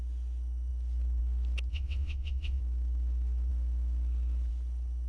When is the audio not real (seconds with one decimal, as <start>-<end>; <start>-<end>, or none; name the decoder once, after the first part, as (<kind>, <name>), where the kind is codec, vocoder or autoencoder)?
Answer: 1.7-2.6 (vocoder, WaveNeXt)

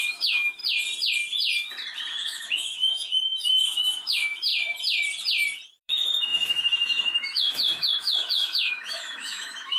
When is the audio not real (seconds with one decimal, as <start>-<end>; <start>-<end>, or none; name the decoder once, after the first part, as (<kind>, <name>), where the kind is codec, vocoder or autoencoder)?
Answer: 0.0-0.6 (autoencoder, DAC-VAE); 2.1-4.5; 5.8-9.8

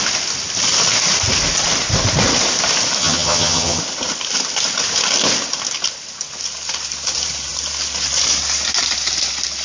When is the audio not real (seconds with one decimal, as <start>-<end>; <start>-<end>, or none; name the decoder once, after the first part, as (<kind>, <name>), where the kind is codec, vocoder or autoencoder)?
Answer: 3.0-3.8 (vocoder, HiFi-GAN)

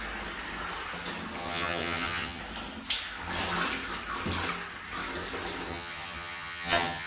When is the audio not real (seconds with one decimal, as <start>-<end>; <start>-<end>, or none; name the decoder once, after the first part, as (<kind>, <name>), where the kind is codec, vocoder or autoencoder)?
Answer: 1.4-2.4 (vocoder, HiFi-GAN); 5.7-7.1

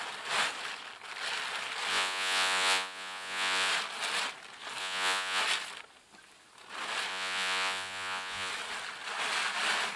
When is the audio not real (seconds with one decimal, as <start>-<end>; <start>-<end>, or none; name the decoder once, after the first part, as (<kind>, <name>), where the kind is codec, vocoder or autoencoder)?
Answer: 1.9-3.7 (vocoder, Vocos); 4.8-5.4; 7.1-8.5